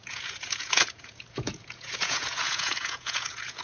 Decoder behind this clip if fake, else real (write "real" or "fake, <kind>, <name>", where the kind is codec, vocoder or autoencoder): fake, vocoder, Vocos